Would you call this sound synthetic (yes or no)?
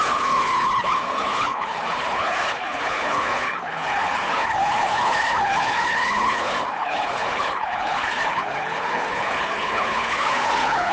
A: yes